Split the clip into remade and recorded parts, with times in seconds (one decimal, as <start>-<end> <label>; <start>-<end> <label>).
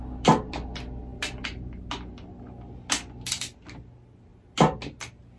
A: 0.0-5.4 recorded